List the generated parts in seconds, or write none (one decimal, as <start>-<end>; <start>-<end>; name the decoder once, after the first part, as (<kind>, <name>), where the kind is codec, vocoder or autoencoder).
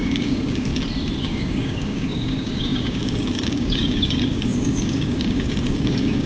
0.0-0.7 (codec, DAC); 1.2-6.3